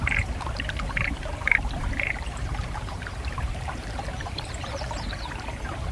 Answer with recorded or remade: remade